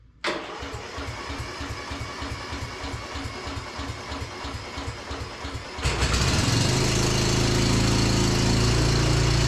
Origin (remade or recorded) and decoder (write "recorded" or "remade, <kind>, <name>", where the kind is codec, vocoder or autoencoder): recorded